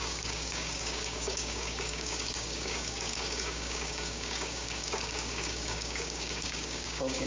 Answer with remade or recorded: remade